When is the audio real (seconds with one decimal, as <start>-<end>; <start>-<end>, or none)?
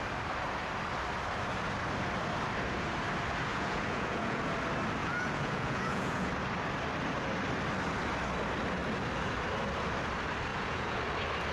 0.0-3.5; 4.4-5.0; 6.3-10.5; 11.0-11.5